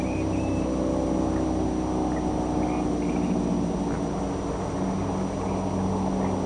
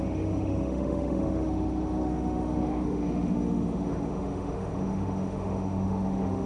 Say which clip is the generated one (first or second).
second